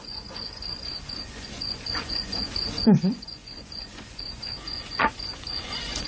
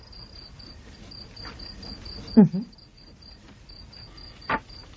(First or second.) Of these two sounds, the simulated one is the first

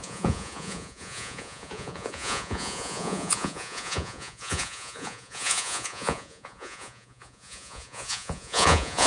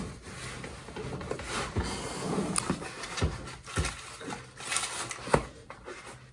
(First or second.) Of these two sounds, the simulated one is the first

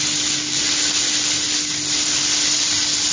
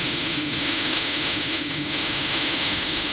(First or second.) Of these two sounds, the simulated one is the second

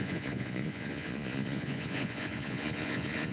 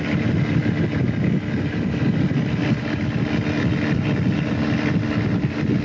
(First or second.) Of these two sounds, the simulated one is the first